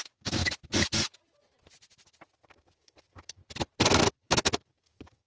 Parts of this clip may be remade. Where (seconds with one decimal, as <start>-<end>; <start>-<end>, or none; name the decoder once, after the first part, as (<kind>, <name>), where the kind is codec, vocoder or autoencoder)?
0.0-0.4 (codec, DAC); 2.5-3.4; 4.1-5.3